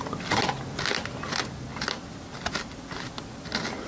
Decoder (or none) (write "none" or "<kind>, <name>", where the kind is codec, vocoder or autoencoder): none